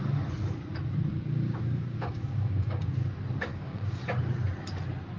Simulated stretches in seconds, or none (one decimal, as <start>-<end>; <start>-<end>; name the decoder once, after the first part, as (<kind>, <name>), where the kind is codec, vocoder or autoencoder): 1.1-2.8 (codec, DAC); 3.5-4.0